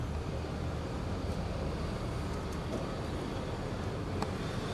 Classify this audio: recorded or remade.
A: recorded